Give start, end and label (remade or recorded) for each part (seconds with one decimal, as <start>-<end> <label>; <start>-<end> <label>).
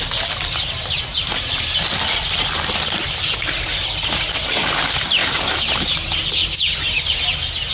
0.0-7.7 recorded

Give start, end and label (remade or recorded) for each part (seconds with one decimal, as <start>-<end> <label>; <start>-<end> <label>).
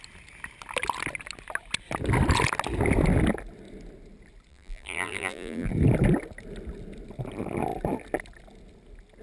0.0-4.5 recorded; 4.5-5.7 remade; 5.7-9.2 recorded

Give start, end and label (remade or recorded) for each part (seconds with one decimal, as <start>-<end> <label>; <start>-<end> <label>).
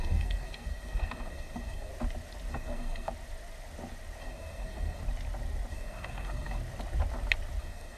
0.0-1.9 remade; 1.9-2.5 recorded; 2.5-3.1 remade; 3.1-4.2 recorded; 4.2-5.0 remade; 5.0-5.7 recorded; 5.7-6.6 remade; 6.6-7.6 recorded; 7.6-8.0 remade